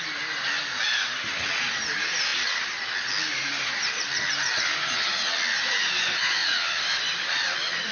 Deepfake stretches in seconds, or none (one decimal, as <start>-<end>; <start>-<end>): 1.1-1.6